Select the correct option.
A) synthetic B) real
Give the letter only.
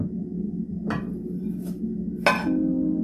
B